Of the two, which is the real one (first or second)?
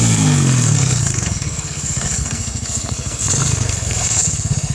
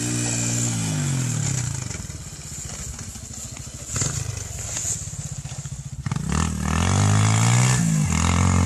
second